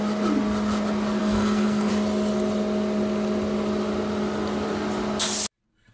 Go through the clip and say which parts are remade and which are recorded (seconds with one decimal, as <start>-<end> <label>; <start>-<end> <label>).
0.0-1.2 recorded; 1.2-1.9 remade; 1.9-5.9 recorded

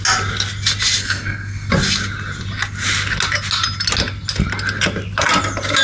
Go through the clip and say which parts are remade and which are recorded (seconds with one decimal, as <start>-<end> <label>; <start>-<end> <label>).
0.0-1.0 recorded; 1.0-1.7 remade; 1.7-5.8 recorded

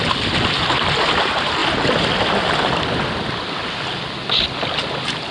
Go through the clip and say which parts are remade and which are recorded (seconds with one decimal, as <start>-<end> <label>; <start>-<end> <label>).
0.0-5.3 recorded

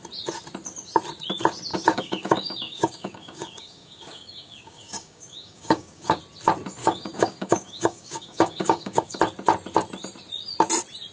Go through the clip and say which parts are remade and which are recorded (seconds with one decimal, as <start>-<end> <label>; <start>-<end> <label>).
0.0-1.7 recorded; 1.7-6.2 remade; 6.2-6.8 recorded; 6.8-9.2 remade; 9.2-11.1 recorded

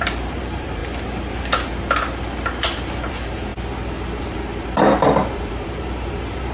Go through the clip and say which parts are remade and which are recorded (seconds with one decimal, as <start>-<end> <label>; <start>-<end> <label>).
0.0-0.8 remade; 0.8-3.1 recorded; 3.1-3.5 remade; 3.5-4.2 recorded; 4.2-6.5 remade